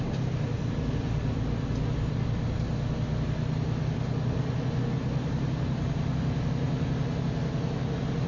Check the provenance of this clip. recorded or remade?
recorded